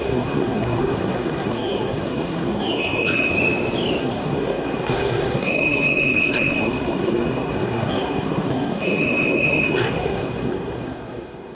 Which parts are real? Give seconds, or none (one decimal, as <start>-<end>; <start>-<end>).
3.3-4.0